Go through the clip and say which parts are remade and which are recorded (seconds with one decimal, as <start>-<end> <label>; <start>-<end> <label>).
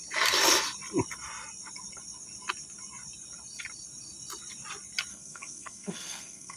0.0-5.1 recorded; 5.1-6.6 remade